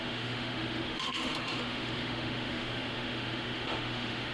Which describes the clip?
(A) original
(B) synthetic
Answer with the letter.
B